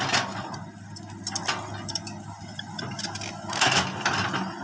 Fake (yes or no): no